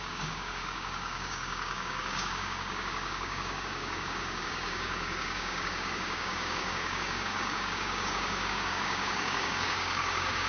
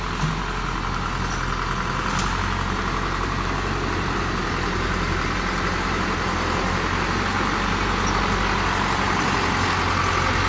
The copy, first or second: first